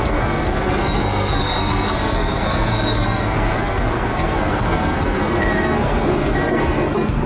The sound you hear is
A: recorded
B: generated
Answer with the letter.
B